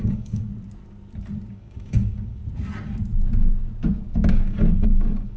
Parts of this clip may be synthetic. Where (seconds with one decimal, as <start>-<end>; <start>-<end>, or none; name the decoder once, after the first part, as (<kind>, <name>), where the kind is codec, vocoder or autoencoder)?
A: 0.0-0.5 (codec, DAC); 1.5-2.4; 4.3-5.4